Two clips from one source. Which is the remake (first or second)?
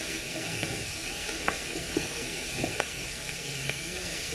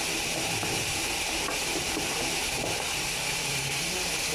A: first